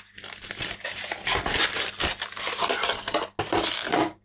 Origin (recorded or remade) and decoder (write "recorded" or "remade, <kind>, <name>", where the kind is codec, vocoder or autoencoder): recorded